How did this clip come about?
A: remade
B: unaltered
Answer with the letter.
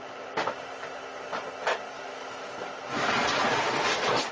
B